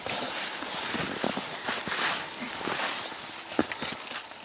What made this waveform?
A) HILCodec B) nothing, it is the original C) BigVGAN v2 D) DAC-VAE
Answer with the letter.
B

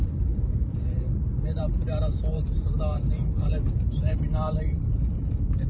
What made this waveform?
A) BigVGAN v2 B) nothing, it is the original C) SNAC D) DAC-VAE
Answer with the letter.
A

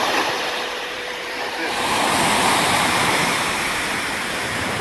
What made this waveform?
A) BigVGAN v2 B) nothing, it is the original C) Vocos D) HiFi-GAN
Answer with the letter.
A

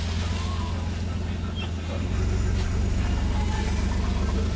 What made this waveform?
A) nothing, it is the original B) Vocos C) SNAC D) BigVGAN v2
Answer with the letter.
A